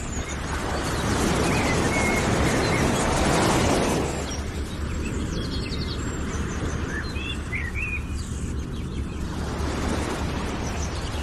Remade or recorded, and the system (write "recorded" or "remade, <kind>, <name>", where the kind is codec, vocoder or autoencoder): recorded